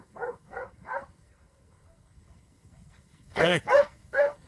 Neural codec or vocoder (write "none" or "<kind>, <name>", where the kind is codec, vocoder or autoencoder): codec, SNAC